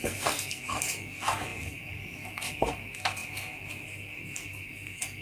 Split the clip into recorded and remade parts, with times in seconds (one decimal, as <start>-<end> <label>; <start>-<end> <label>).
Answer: 0.0-5.2 remade